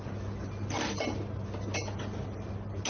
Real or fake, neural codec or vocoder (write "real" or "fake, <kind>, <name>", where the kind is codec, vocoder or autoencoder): real